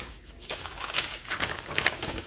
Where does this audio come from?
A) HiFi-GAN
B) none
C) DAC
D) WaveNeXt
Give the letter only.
C